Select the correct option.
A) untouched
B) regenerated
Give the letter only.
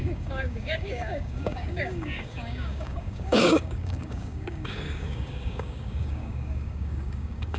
B